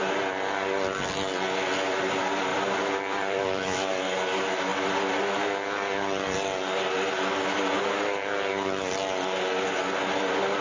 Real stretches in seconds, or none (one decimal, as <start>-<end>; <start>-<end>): 0.0-2.5; 3.9-10.6